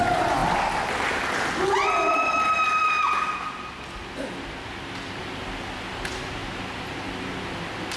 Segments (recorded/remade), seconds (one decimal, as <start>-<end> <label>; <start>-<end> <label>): 0.0-8.0 recorded